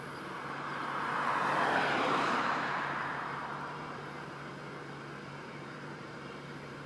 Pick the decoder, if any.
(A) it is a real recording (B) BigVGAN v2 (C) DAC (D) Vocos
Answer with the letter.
B